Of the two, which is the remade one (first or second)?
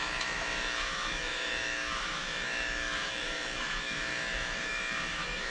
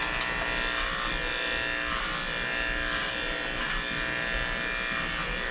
first